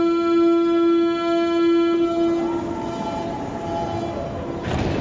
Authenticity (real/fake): real